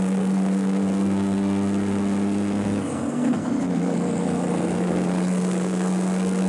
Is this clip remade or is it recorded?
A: remade